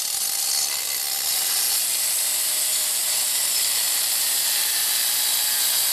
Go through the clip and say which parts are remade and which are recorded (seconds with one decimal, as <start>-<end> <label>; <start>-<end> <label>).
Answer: 0.0-5.9 recorded